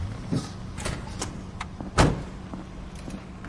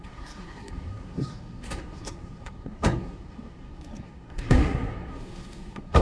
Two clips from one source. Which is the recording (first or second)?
first